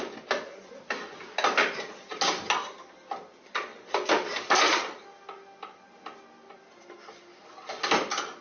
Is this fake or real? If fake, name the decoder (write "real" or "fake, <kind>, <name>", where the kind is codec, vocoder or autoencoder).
real